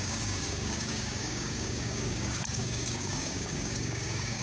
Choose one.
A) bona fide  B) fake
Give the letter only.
B